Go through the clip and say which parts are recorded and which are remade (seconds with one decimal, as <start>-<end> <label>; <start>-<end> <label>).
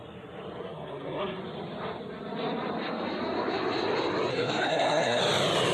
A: 0.0-0.6 recorded; 0.6-1.4 remade; 1.4-4.3 recorded; 4.3-5.2 remade; 5.2-5.7 recorded